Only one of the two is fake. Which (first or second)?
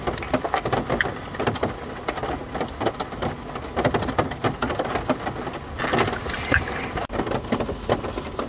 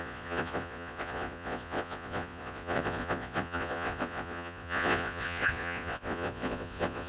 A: second